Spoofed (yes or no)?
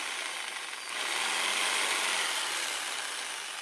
no